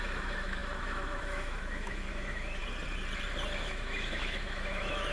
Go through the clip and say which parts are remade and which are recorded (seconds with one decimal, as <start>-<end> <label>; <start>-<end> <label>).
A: 0.0-2.6 remade; 2.6-3.6 recorded; 3.6-5.1 remade